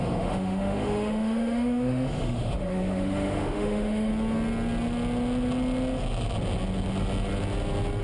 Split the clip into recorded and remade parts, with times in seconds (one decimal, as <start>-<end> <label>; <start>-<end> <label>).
0.0-4.1 remade; 4.1-8.0 recorded